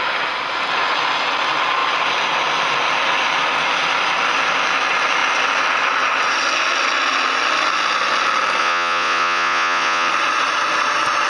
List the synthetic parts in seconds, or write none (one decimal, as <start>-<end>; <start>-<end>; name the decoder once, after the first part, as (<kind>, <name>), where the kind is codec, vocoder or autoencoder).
8.6-10.1 (vocoder, Vocos)